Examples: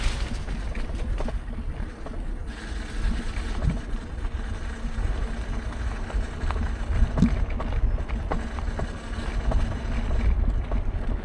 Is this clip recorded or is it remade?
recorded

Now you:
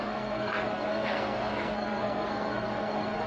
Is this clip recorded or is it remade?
remade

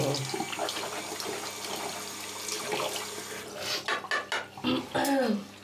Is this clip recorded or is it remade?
recorded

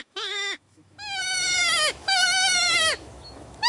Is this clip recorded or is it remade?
remade